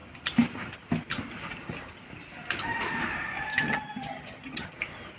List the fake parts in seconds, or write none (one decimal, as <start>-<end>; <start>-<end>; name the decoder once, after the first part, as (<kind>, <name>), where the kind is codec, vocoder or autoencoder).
3.5-4.7 (vocoder, HiFi-GAN)

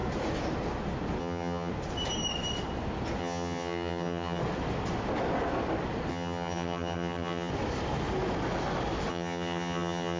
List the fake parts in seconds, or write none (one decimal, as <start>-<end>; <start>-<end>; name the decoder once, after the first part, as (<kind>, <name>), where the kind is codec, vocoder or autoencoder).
1.2-1.7 (vocoder, HiFi-GAN); 3.2-4.4; 6.1-7.5; 9.1-10.2

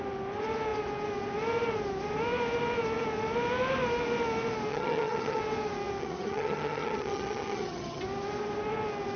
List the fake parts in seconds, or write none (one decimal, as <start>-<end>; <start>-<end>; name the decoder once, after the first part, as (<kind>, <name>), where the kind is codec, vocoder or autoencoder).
4.7-5.4 (vocoder, HiFi-GAN); 6.0-8.0

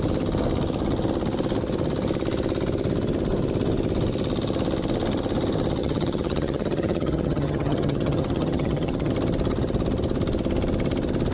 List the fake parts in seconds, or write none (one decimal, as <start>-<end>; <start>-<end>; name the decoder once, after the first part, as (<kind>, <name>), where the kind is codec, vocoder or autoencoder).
5.8-9.1 (vocoder, HiFi-GAN)

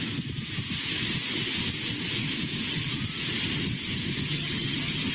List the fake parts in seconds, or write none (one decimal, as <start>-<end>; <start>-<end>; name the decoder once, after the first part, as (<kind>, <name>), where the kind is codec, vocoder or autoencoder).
4.3-5.1 (vocoder, HiFi-GAN)

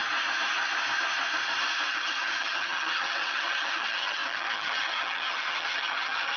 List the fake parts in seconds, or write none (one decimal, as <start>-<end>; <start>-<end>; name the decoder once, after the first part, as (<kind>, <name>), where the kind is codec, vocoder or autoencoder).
1.9-6.4 (vocoder, HiFi-GAN)

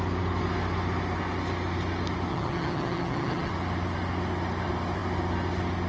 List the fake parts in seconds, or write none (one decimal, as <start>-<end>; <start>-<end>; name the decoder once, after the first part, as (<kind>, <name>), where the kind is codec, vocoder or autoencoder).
2.3-3.5 (vocoder, HiFi-GAN)

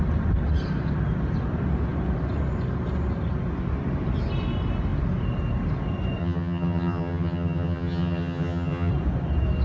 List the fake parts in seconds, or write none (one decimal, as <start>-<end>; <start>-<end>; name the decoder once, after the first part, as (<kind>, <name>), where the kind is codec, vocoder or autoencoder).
6.2-8.9 (vocoder, HiFi-GAN)